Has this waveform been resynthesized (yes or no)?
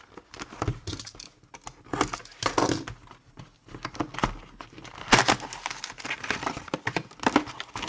no